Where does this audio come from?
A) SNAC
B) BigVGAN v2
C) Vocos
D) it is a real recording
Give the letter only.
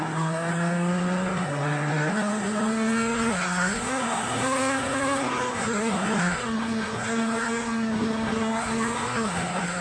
A